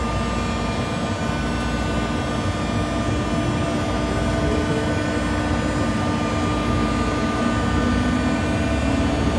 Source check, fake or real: real